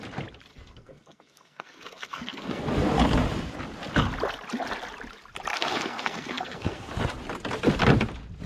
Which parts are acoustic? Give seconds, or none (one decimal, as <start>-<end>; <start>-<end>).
0.0-0.5; 2.6-5.5; 6.9-8.5